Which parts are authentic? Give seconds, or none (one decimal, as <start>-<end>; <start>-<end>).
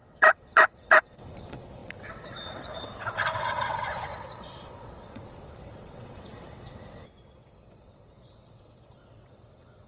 none